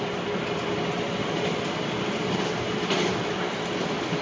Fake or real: real